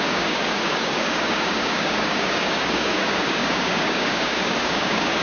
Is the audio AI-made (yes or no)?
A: yes